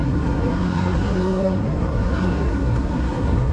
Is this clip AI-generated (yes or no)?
yes